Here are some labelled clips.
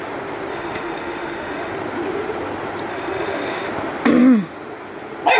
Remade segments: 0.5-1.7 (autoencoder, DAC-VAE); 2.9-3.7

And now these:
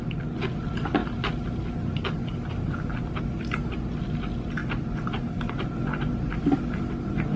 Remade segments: none

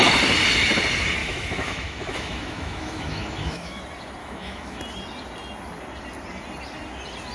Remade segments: 1.2-3.8 (autoencoder, DAC-VAE); 4.2-4.8